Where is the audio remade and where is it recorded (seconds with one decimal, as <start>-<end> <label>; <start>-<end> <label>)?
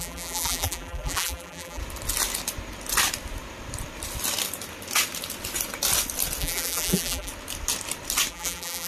0.0-1.8 remade; 1.8-6.4 recorded; 6.4-7.3 remade; 7.3-8.3 recorded; 8.3-8.9 remade